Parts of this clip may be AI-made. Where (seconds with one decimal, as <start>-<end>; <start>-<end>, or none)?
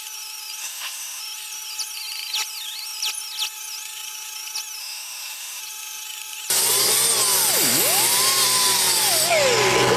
0.6-1.2; 4.8-5.6